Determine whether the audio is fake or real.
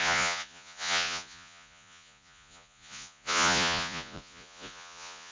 fake